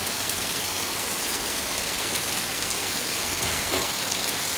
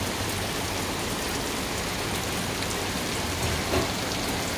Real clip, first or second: second